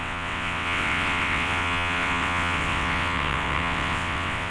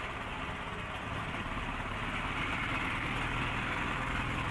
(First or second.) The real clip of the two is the second